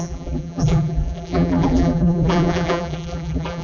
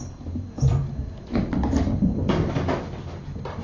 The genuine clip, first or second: second